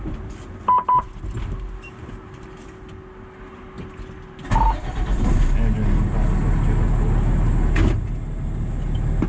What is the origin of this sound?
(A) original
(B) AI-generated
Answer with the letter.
A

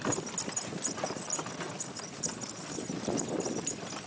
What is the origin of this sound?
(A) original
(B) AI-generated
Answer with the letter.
A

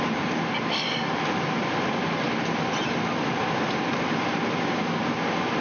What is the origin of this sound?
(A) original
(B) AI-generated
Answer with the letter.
A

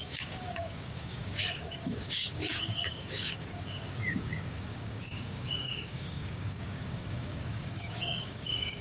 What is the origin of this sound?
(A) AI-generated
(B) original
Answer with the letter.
A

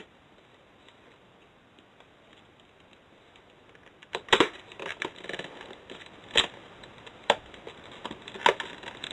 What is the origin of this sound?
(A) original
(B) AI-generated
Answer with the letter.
A